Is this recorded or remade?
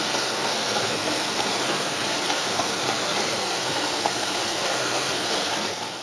remade